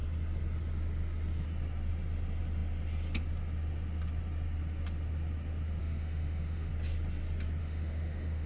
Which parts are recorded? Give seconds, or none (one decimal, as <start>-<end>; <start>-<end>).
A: 0.0-5.8; 6.7-7.6